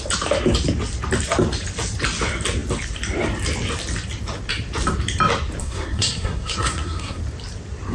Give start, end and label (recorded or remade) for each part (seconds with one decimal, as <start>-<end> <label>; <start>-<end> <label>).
0.0-5.6 recorded; 5.6-7.2 remade; 7.2-7.9 recorded